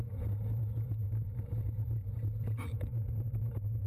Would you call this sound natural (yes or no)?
no